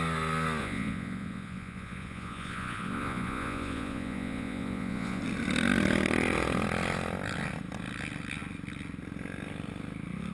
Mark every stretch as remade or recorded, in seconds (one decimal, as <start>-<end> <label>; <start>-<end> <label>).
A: 0.0-0.6 recorded; 0.6-5.2 remade; 5.2-10.3 recorded